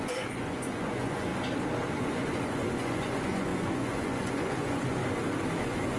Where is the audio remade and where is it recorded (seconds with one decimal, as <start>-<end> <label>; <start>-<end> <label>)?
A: 0.0-1.3 remade; 1.3-1.9 recorded; 1.9-5.0 remade; 5.0-5.6 recorded; 5.6-6.0 remade